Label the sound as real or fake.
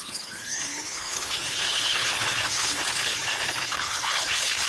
fake